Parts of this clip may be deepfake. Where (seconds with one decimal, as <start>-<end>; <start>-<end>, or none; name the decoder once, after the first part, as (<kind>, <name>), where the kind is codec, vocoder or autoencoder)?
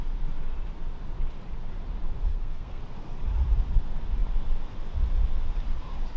2.3-2.8 (codec, SNAC)